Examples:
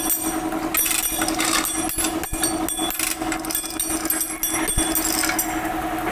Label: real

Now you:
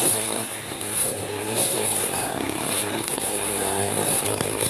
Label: fake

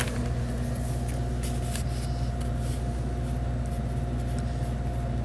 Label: real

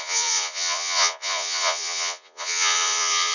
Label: fake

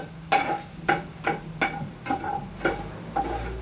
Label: real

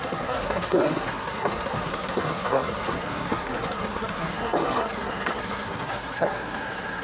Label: fake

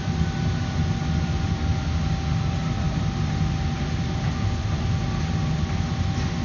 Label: real